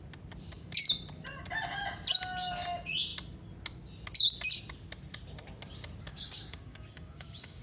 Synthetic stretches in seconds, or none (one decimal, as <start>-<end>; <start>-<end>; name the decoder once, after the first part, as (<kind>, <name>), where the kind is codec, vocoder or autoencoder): 6.1-7.6 (codec, DAC)